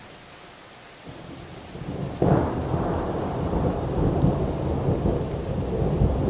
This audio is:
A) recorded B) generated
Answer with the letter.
A